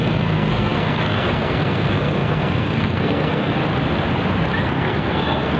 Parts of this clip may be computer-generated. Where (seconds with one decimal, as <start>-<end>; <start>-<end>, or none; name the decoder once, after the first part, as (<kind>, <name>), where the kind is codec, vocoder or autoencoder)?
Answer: 0.0-3.6 (codec, SNAC); 4.6-5.6

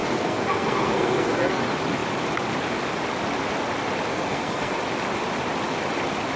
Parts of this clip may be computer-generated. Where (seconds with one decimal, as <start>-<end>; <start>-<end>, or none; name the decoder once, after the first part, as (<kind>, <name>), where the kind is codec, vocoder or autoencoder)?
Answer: 0.0-1.6 (codec, SNAC); 4.1-4.8

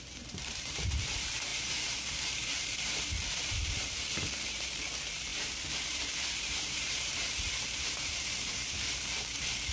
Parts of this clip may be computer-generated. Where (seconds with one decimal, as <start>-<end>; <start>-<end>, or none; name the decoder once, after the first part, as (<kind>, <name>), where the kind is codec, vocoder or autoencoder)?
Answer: 0.0-9.7 (vocoder, BigVGAN v2)

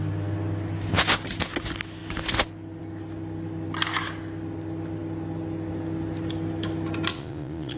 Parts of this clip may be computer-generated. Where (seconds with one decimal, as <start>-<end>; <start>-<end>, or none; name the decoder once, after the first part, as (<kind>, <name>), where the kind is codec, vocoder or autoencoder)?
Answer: 7.1-7.8 (vocoder, Vocos)

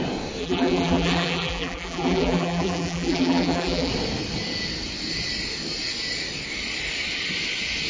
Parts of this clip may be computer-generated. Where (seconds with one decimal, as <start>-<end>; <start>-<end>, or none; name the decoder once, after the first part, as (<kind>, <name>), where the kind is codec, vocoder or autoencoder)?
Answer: 0.4-3.9 (vocoder, BigVGAN v2)

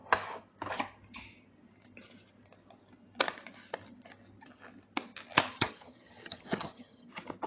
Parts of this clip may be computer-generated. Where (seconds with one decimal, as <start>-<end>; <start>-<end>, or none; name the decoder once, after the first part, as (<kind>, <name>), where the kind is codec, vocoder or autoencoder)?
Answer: 5.5-7.1 (vocoder, HiFi-GAN)